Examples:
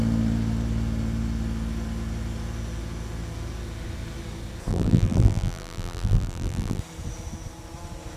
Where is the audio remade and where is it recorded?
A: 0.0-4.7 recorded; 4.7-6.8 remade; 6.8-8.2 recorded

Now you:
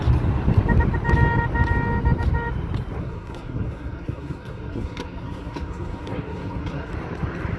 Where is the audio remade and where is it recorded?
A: 0.0-3.0 recorded; 3.0-6.9 remade; 6.9-7.6 recorded

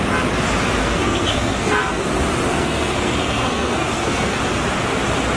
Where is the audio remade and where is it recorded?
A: 0.0-0.8 recorded; 0.8-2.0 remade; 2.0-2.5 recorded; 2.5-4.4 remade; 4.4-5.4 recorded

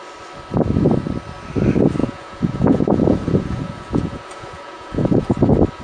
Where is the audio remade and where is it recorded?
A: 0.0-2.0 recorded; 2.0-5.3 remade; 5.3-5.8 recorded

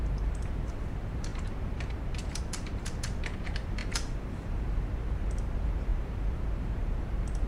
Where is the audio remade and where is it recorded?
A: 0.0-7.5 remade

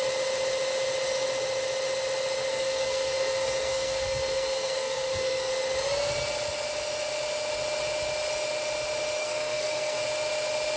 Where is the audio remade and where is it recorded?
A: 0.0-2.5 recorded; 2.5-5.5 remade; 5.5-9.2 recorded; 9.2-10.0 remade; 10.0-10.8 recorded